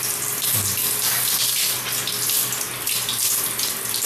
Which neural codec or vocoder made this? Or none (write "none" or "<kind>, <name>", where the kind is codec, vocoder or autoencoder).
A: none